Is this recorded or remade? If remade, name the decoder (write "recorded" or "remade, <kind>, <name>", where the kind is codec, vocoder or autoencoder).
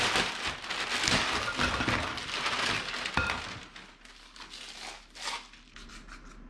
recorded